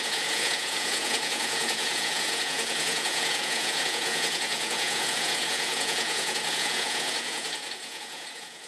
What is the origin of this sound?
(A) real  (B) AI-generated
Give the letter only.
B